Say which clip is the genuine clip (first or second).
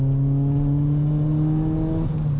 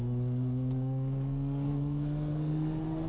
first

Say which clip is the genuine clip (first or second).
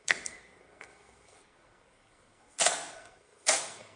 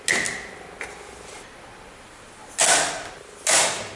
second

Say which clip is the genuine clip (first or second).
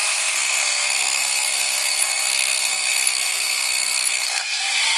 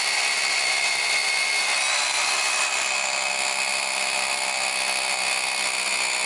second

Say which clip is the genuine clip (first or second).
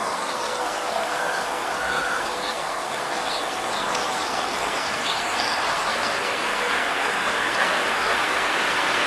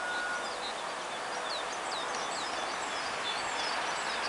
second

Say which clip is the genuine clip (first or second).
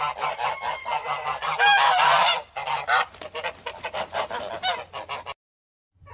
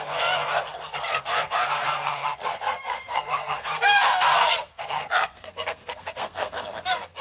first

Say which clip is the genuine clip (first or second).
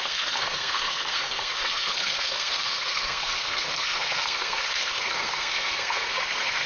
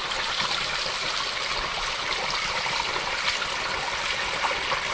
second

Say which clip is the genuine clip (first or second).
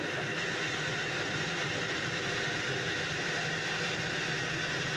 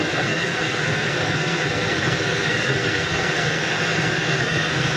first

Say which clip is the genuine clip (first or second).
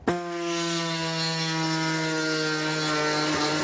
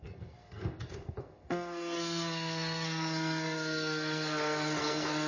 first